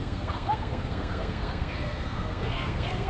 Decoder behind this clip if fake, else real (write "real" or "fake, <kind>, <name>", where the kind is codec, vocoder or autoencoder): fake, codec, SNAC